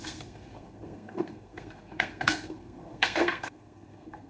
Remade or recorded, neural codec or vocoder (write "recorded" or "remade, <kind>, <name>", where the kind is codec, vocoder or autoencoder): remade, codec, SNAC